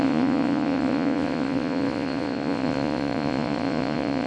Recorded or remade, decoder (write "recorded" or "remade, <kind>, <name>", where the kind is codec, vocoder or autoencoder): remade, vocoder, Vocos